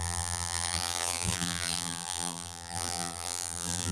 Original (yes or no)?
no